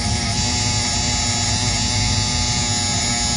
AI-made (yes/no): no